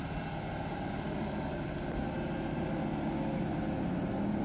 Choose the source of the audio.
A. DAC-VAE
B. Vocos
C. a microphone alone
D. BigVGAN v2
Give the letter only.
C